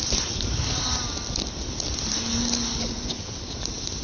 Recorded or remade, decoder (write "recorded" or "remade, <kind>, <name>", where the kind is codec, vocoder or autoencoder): recorded